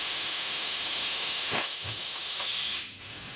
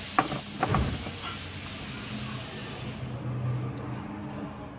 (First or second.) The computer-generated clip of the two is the first